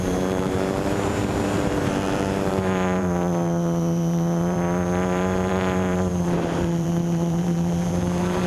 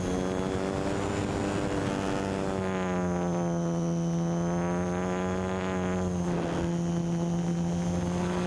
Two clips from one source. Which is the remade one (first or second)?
first